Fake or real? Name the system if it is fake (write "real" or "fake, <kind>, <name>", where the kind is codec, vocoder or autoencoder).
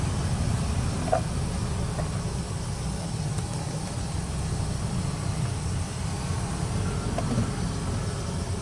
real